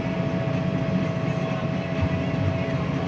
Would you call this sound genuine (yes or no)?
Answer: yes